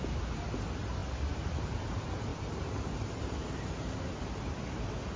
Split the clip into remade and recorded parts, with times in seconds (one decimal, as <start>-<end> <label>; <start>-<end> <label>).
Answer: 0.0-5.2 recorded